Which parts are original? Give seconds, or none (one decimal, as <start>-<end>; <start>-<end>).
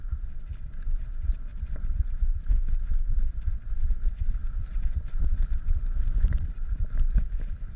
0.0-1.5; 2.3-2.9; 3.5-4.4; 6.8-7.8